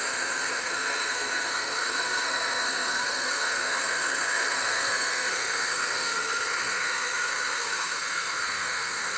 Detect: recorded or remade remade